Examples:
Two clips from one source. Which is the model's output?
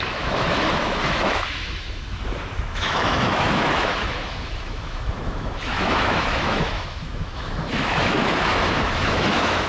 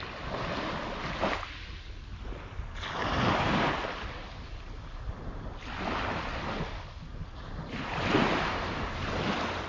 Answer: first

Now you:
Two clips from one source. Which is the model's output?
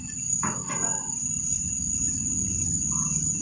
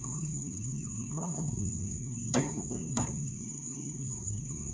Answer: second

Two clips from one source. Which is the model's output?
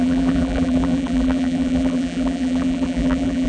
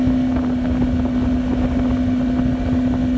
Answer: first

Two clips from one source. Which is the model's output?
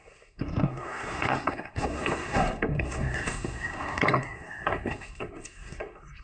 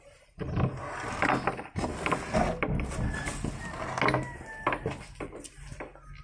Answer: first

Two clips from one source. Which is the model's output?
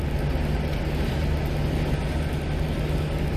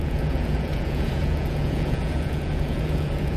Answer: second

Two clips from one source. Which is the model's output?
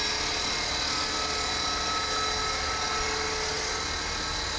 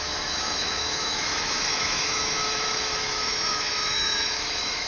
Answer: second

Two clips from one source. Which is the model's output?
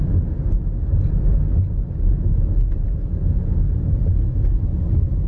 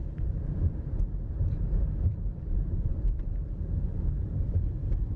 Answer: second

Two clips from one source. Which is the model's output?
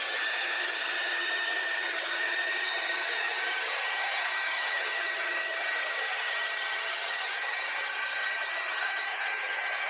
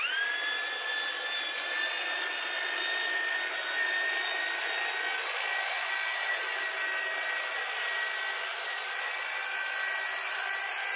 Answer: first